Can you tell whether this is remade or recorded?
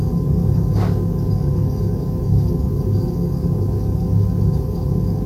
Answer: remade